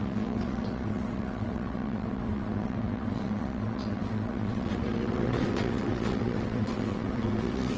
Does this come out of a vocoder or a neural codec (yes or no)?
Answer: yes